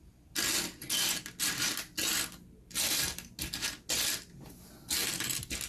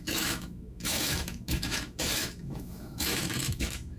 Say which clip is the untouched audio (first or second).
first